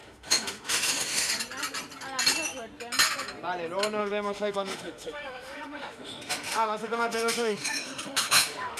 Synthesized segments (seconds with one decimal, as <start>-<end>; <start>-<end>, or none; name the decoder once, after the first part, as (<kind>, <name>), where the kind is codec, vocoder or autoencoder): 0.0-1.3 (autoencoder, DAC-VAE); 4.0-8.8